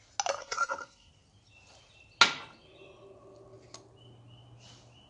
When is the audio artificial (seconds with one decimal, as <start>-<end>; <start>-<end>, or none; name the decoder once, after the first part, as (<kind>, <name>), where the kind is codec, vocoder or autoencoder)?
0.4-1.1 (codec, SNAC)